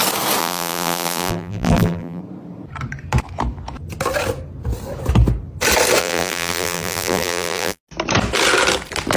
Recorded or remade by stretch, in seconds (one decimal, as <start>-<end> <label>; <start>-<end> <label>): 0.0-0.4 recorded; 0.4-2.2 remade; 2.2-6.0 recorded; 6.0-7.8 remade; 7.8-9.2 recorded